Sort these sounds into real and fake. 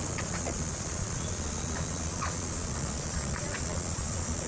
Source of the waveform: fake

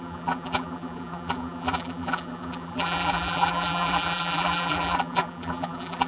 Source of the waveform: fake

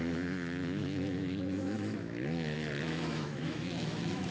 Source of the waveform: fake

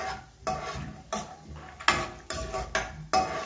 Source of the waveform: real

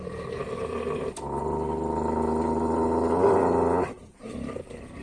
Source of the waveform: real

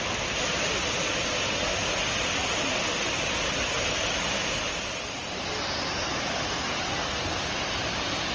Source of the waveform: real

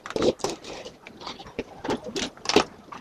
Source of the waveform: fake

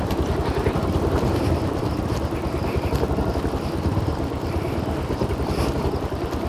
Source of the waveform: fake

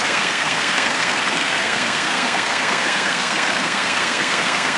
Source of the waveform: fake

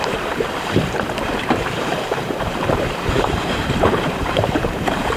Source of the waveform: fake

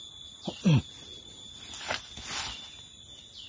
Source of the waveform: real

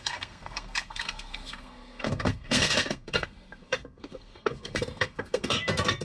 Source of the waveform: fake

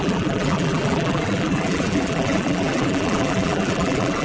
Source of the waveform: fake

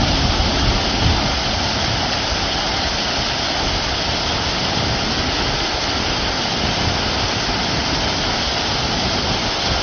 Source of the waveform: real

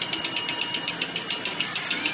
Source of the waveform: real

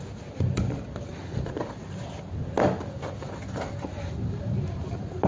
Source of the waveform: real